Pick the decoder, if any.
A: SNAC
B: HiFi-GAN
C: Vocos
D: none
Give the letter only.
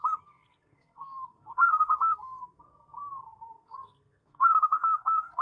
A